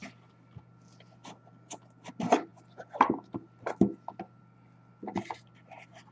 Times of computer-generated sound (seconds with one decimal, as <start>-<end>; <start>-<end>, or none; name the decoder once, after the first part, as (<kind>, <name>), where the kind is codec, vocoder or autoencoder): none